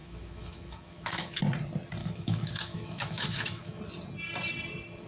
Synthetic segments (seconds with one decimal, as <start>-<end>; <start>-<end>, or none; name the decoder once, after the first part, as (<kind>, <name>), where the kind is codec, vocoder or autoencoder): 0.0-1.4 (autoencoder, DAC-VAE); 2.0-3.8